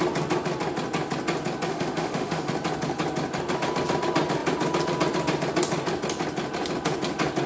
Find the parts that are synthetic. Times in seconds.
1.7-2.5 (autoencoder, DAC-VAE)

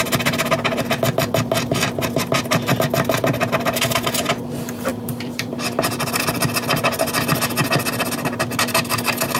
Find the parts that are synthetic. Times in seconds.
4.9-6.1 (vocoder, BigVGAN v2)

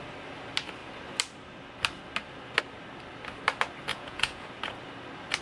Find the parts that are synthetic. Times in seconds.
3.9-4.5 (vocoder, Vocos)